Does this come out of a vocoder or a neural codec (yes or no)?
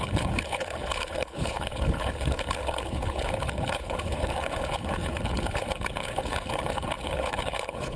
yes